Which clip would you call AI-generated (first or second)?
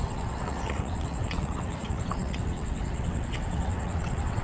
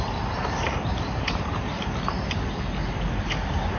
first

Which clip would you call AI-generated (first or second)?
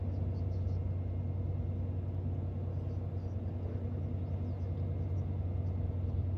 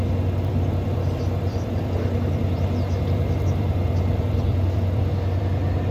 second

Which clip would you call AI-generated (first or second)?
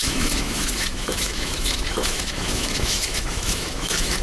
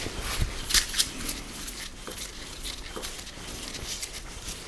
first